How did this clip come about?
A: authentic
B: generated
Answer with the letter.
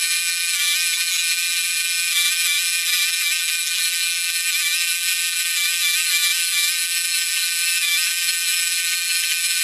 B